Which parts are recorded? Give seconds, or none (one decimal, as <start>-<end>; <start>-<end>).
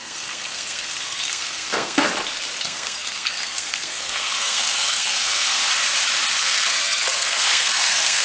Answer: 2.1-2.6; 5.6-6.4